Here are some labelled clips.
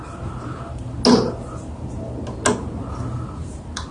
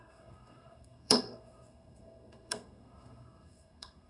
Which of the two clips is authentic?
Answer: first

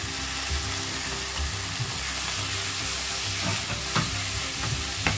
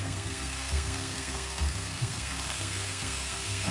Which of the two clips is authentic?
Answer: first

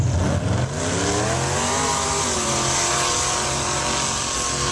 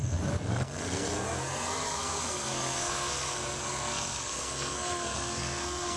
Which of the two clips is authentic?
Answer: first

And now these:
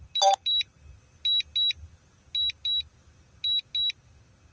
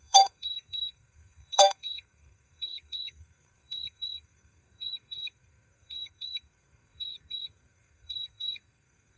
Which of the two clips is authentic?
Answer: first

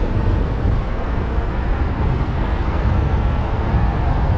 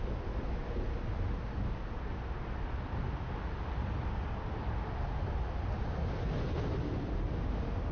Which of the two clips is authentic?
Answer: second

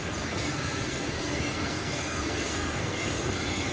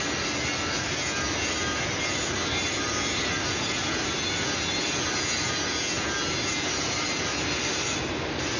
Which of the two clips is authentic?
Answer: second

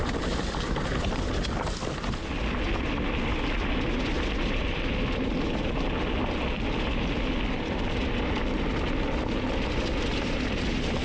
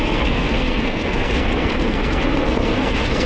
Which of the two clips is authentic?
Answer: first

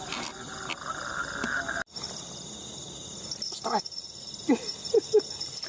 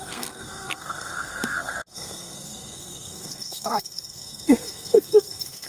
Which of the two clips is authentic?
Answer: first